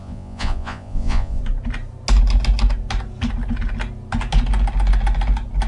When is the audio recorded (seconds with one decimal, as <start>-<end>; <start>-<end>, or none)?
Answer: 1.4-5.7

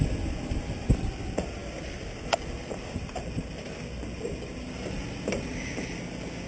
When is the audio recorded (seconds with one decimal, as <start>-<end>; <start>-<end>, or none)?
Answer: 0.0-6.5

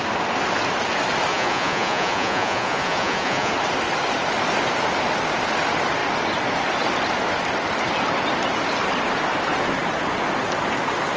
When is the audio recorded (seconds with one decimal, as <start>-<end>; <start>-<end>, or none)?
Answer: 0.0-1.3; 3.5-11.2

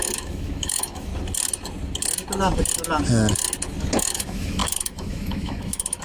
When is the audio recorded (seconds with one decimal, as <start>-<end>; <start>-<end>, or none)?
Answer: 1.1-4.0